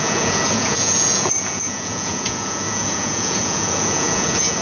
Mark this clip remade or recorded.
remade